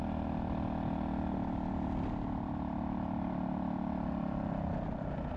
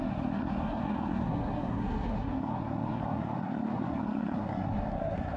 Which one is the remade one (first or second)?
second